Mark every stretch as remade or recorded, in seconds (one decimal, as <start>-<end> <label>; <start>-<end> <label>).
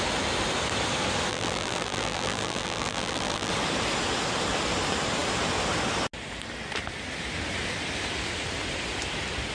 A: 0.0-1.3 recorded; 1.3-3.5 remade; 3.5-9.5 recorded